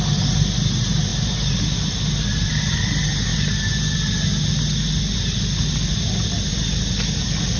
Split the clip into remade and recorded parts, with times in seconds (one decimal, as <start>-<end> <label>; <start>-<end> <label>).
0.0-1.1 recorded; 1.1-2.5 remade; 2.5-6.5 recorded; 6.5-7.6 remade